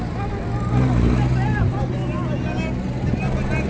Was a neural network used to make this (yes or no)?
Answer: no